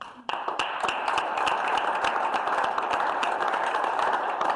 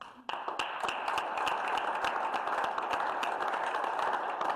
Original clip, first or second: second